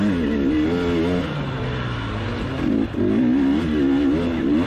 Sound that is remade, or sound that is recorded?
recorded